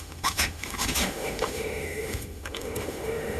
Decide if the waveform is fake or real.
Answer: fake